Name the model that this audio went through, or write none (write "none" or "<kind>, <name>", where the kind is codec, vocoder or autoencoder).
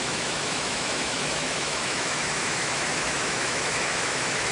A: autoencoder, DAC-VAE